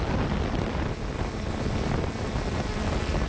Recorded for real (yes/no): yes